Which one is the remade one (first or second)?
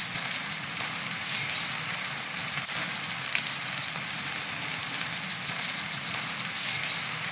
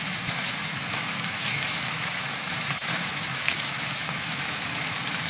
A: second